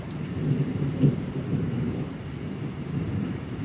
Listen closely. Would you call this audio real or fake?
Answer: fake